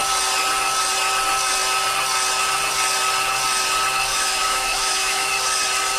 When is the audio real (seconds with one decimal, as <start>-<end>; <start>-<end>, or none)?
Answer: 0.0-4.1; 5.3-6.0